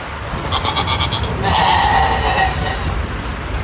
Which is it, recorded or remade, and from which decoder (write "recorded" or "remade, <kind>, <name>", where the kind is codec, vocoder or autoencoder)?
recorded